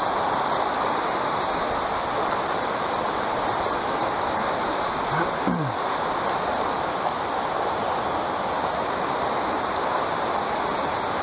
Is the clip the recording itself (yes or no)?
yes